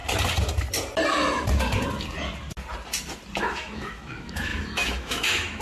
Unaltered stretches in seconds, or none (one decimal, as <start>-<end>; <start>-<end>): 0.0-3.4